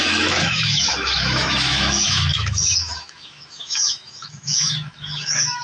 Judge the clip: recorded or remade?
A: remade